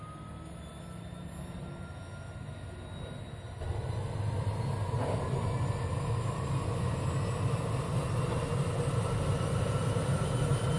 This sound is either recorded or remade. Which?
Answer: recorded